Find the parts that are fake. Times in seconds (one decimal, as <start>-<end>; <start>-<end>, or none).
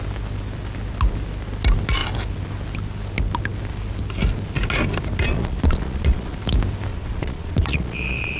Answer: 5.3-6.4; 6.9-8.4